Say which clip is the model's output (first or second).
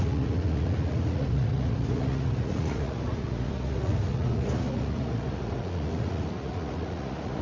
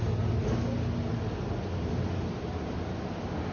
first